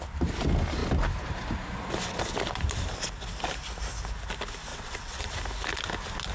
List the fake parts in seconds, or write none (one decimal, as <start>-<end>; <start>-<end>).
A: 4.7-5.3